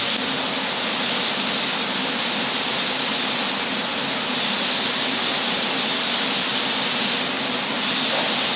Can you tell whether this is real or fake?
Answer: real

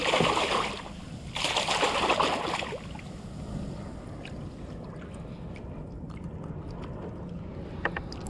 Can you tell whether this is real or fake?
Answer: real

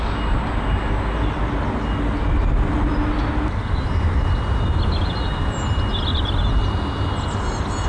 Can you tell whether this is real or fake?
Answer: real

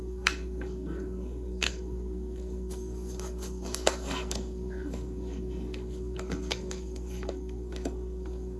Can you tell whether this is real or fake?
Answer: fake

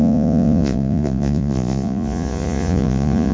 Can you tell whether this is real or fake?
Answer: fake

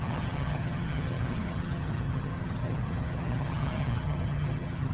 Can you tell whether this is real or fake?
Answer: fake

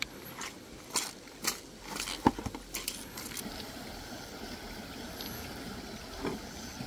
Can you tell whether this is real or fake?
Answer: real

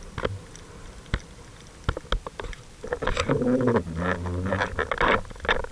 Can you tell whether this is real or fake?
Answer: real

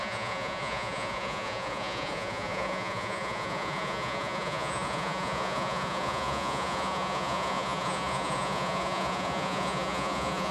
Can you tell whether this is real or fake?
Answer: fake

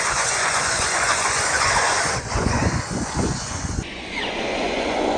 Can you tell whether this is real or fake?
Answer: fake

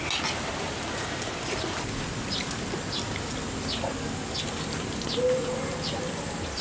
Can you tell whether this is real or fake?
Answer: real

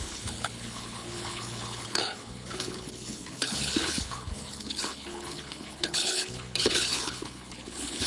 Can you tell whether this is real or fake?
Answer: fake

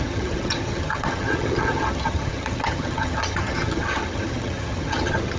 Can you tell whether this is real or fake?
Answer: fake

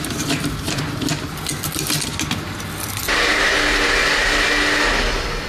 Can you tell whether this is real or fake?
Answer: real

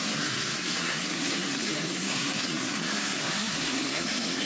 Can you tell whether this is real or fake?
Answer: fake